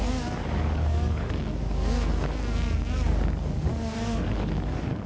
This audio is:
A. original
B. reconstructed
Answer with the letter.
B